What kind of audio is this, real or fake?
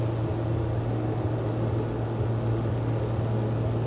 real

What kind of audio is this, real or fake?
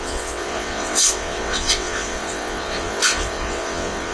fake